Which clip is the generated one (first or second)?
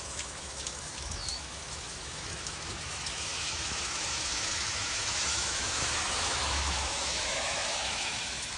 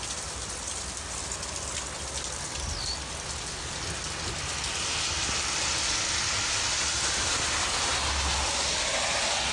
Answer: first